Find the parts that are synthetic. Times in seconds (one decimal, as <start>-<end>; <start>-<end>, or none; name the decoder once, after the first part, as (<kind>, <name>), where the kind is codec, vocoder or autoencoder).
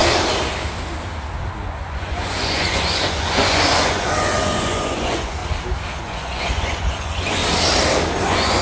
1.6-5.4 (vocoder, Vocos); 6.0-7.4; 8.2-8.6